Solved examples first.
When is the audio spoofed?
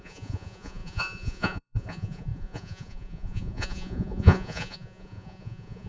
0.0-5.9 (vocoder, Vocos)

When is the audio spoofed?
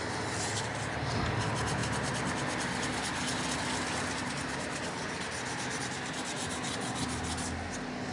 none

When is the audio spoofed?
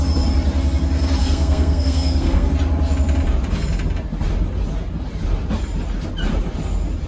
1.2-2.5 (codec, SNAC)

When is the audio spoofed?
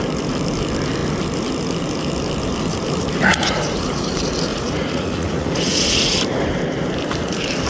3.3-4.1 (vocoder, Vocos); 4.5-6.2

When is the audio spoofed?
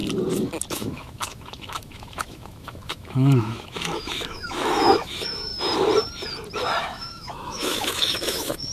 0.7-5.5 (autoencoder, DAC-VAE); 6.8-8.7